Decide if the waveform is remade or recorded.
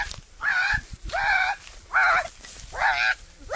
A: recorded